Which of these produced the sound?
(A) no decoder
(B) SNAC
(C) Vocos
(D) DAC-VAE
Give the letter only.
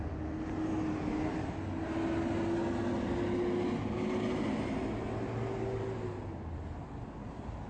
A